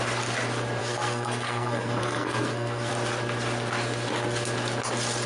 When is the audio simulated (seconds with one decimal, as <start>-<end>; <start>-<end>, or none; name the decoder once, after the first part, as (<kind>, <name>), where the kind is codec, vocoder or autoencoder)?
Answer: 0.8-2.9 (codec, SNAC)